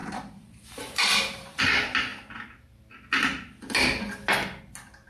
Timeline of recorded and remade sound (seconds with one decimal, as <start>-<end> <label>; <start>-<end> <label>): 0.0-1.6 remade; 1.6-5.1 recorded